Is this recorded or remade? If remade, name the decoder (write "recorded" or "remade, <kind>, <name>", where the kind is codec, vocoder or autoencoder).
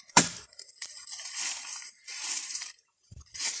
remade, vocoder, BigVGAN v2